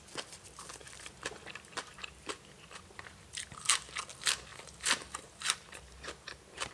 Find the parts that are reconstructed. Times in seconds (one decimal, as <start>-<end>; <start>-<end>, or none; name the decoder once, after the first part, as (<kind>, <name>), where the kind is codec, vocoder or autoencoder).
0.8-3.7 (vocoder, BigVGAN v2); 4.5-6.7